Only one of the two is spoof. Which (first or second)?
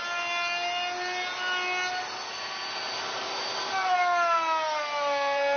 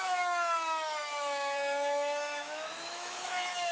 second